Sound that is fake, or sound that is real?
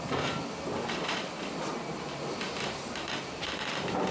real